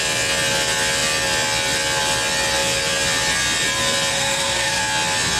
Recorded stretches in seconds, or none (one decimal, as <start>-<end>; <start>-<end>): 0.0-4.1; 4.8-5.4